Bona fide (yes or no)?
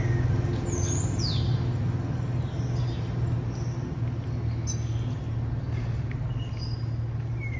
yes